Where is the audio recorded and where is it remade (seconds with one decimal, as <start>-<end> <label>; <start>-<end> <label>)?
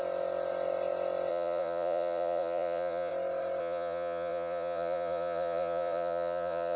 0.0-1.3 recorded; 1.3-3.1 remade; 3.1-3.6 recorded; 3.6-6.8 remade